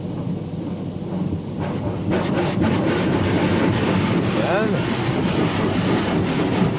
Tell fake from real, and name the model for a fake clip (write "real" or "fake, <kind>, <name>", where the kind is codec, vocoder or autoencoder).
real